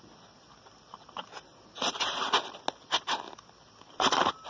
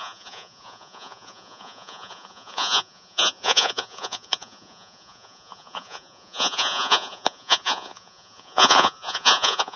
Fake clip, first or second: second